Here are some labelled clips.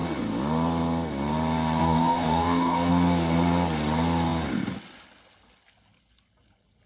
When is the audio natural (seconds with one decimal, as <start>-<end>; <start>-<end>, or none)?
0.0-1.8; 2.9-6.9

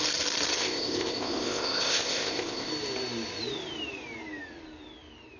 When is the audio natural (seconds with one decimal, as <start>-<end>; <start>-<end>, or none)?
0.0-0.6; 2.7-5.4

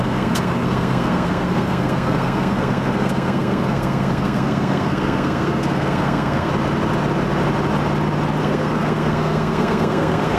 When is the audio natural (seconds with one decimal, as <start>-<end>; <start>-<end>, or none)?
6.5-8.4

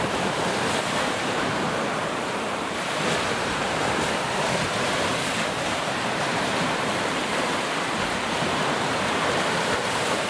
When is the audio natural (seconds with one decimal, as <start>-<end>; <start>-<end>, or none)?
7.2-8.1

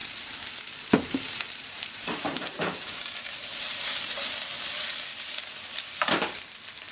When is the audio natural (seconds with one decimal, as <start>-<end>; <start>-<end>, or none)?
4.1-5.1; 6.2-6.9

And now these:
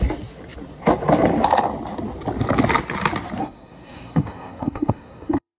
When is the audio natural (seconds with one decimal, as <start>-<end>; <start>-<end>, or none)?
0.0-3.4

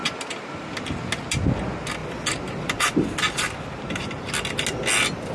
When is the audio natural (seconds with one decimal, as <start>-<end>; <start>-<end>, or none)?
0.0-5.3

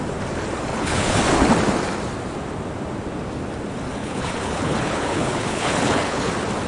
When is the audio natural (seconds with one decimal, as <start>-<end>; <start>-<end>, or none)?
0.0-0.7; 1.2-4.0; 6.3-6.7